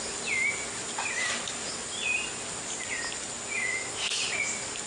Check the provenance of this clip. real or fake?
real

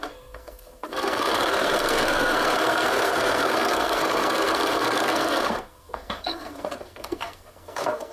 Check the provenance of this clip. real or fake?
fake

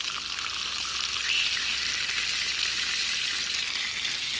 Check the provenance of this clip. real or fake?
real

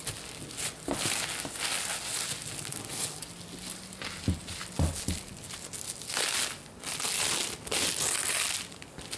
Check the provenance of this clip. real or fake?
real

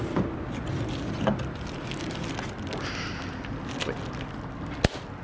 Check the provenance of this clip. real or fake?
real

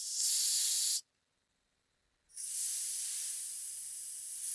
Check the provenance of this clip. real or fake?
real